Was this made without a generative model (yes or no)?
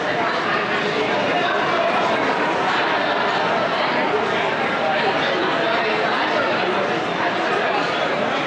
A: yes